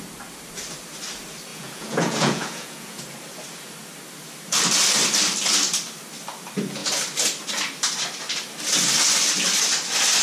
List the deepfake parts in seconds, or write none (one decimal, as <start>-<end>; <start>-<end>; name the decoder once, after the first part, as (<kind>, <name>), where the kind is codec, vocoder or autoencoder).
1.5-3.0 (vocoder, Vocos)